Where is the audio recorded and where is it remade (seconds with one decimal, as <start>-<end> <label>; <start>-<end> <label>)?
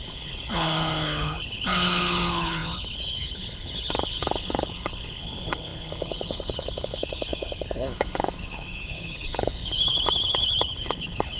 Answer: 0.0-11.4 remade